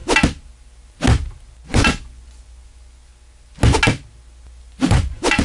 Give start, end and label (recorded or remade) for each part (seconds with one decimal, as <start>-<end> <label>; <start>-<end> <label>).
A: 0.0-1.6 recorded; 1.6-3.1 remade; 3.1-4.6 recorded; 4.6-5.4 remade